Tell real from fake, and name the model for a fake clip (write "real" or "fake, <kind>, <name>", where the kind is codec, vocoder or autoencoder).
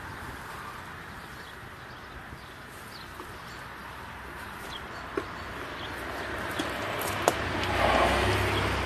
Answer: real